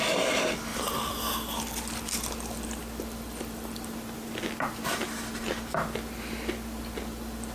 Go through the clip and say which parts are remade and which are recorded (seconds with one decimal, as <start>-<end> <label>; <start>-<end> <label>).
0.0-0.7 recorded; 0.7-2.0 remade; 2.0-2.8 recorded; 2.8-4.4 remade; 4.4-7.5 recorded